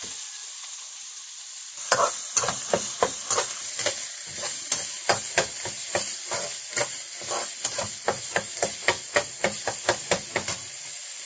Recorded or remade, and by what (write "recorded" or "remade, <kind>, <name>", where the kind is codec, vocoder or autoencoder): recorded